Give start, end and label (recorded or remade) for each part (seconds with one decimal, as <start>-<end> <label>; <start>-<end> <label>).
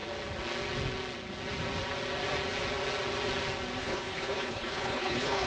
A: 0.0-3.8 recorded; 3.8-5.5 remade